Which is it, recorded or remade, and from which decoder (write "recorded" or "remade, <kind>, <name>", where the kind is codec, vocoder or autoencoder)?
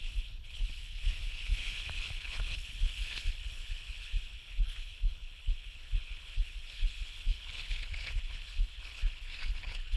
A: remade, codec, HILCodec